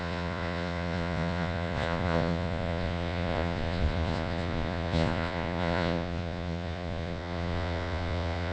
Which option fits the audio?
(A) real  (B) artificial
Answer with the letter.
B